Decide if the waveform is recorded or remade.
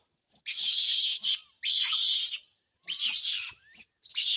recorded